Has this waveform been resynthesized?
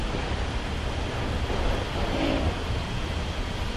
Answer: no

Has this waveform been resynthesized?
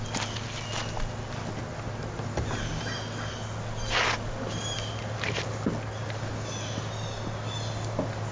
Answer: no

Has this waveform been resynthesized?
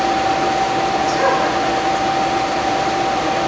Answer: no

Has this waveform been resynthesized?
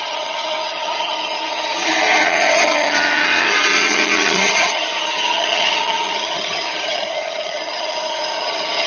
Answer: yes